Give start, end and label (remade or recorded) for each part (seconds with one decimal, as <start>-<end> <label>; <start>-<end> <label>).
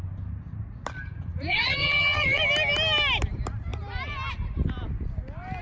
0.0-1.5 recorded; 1.5-2.4 remade; 2.4-5.6 recorded